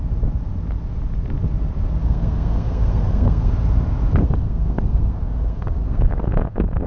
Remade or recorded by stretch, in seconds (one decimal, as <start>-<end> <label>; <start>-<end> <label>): 0.0-2.0 recorded; 2.0-3.5 remade; 3.5-4.2 recorded; 4.2-6.9 remade